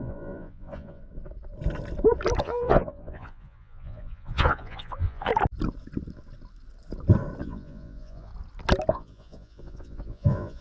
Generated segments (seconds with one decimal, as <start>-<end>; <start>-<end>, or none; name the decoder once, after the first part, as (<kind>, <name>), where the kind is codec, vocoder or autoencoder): 0.0-1.0 (vocoder, Vocos); 2.4-5.3; 7.4-8.3; 8.9-10.6